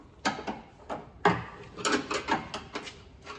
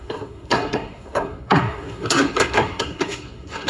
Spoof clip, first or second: second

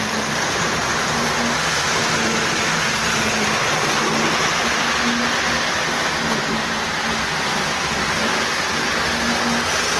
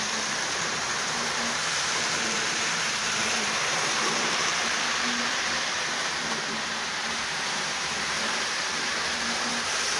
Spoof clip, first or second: second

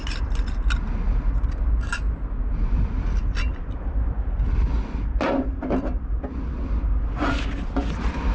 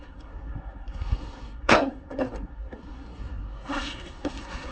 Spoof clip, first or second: second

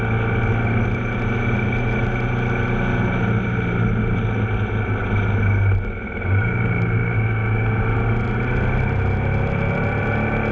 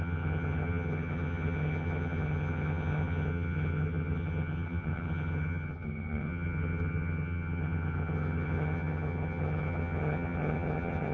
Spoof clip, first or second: second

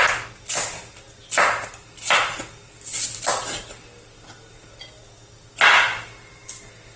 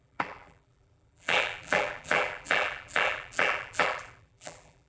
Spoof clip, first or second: second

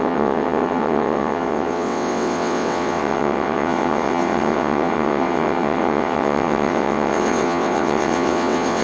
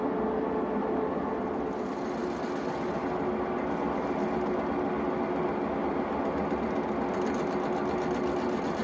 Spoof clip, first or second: first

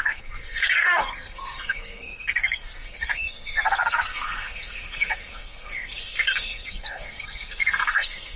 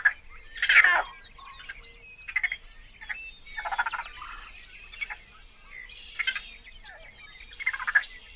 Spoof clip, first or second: first